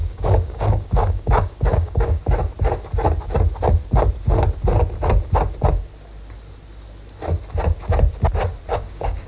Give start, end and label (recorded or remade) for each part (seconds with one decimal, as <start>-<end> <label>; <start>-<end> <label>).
0.0-2.2 remade; 2.2-8.7 recorded; 8.7-9.3 remade